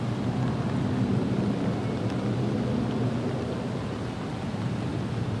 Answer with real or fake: real